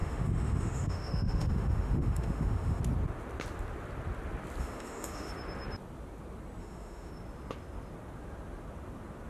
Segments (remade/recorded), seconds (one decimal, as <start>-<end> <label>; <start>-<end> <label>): 0.0-2.8 remade; 2.8-4.6 recorded; 4.6-5.3 remade; 5.3-6.6 recorded; 6.6-7.1 remade; 7.1-9.3 recorded

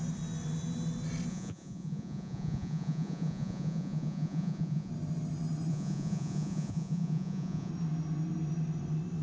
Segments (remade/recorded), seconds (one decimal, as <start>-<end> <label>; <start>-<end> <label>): 0.0-1.3 recorded; 1.3-4.9 remade; 4.9-5.7 recorded; 5.7-7.7 remade; 7.7-9.2 recorded

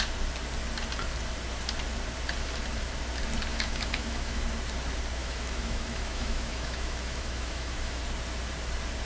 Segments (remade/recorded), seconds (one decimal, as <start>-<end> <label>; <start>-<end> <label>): 0.0-3.5 recorded; 3.5-4.4 remade; 4.4-5.2 recorded; 5.2-8.0 remade; 8.0-9.1 recorded